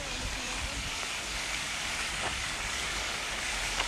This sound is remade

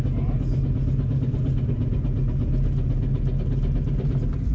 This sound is recorded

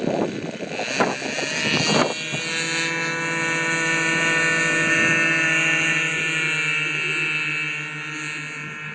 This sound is recorded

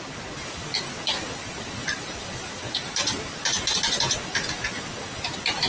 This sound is recorded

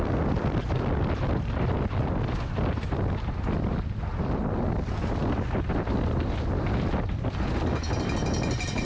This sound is recorded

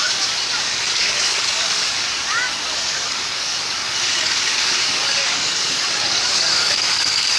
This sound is remade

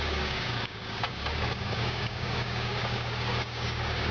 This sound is remade